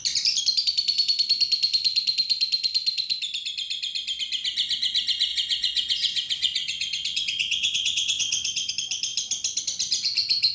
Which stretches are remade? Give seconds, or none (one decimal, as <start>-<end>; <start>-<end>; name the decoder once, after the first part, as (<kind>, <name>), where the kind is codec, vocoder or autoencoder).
5.3-8.7 (vocoder, Vocos)